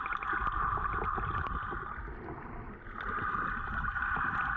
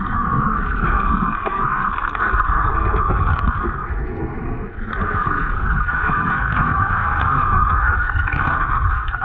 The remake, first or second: second